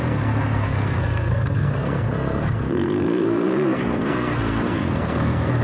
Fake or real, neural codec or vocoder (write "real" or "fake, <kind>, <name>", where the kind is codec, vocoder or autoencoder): fake, codec, SNAC